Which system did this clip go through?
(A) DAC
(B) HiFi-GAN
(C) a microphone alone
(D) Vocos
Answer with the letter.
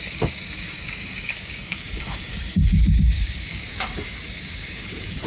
A